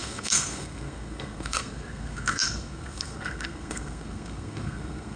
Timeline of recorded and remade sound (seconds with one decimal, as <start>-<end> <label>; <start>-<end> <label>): 0.0-5.2 remade